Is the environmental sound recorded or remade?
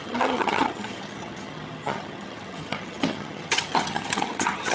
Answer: remade